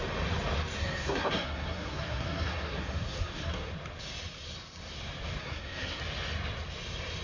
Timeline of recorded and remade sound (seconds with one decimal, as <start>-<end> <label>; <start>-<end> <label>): 0.0-0.8 recorded; 0.8-3.7 remade; 3.7-5.4 recorded; 5.4-6.0 remade; 6.0-7.2 recorded